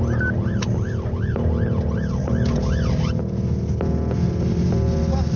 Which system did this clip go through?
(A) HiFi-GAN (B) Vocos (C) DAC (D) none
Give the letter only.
D